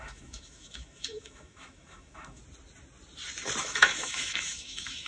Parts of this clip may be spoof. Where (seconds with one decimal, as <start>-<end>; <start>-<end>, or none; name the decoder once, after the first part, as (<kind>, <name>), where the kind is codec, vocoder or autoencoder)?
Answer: 0.0-2.4 (autoencoder, DAC-VAE); 3.6-5.1